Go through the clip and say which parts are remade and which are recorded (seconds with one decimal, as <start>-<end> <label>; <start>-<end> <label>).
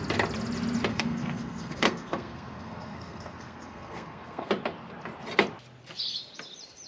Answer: 0.0-0.9 recorded; 0.9-4.5 remade; 4.5-6.9 recorded